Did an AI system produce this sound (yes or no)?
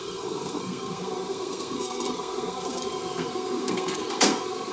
yes